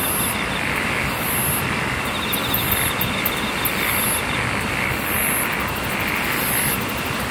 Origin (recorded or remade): recorded